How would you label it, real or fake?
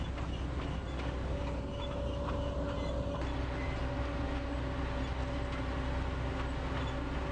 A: real